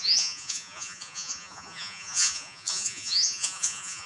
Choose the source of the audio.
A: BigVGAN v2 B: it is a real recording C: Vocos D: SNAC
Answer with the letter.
C